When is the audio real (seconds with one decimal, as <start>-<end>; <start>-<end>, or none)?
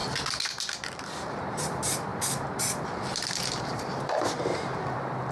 0.0-1.3; 2.1-3.6